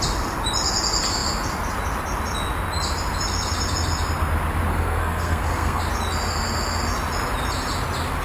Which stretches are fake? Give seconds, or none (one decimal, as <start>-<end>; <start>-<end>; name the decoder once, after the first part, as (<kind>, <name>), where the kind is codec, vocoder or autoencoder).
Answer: 4.7-5.8 (codec, SNAC)